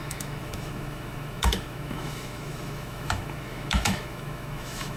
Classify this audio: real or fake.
fake